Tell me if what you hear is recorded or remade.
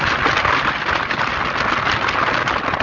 recorded